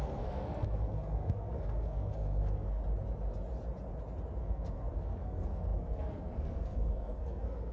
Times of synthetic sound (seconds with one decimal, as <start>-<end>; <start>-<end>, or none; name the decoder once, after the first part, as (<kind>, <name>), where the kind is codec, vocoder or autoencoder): 0.0-2.8 (codec, SNAC); 4.4-7.7